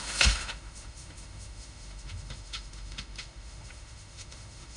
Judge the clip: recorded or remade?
remade